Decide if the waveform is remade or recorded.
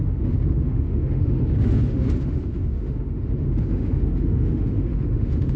remade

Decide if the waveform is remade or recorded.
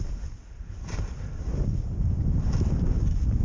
remade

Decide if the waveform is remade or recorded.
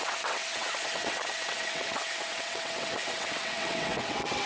remade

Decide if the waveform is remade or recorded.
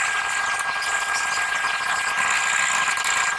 recorded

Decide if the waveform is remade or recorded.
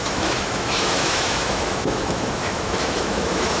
remade